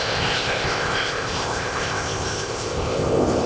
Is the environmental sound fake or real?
fake